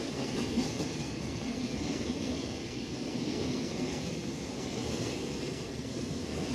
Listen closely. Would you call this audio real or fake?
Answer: fake